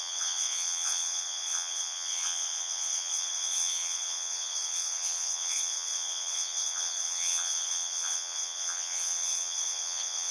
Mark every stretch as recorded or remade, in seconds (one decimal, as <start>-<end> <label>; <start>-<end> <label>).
0.0-10.3 remade